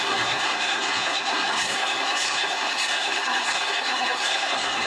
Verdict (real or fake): fake